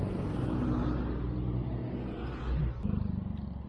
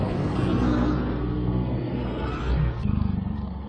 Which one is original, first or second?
first